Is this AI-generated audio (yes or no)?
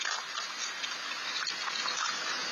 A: no